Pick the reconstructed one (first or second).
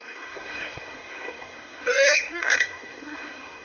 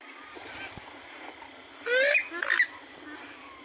first